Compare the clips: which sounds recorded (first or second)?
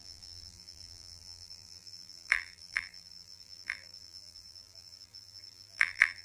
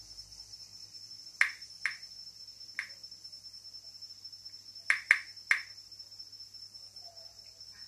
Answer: second